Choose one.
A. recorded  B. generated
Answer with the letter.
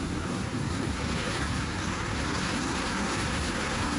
B